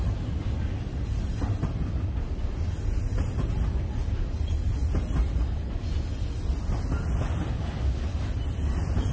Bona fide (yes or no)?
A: yes